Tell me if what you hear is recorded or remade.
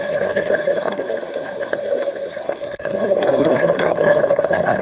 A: remade